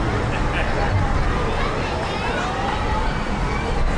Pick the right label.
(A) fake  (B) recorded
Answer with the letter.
B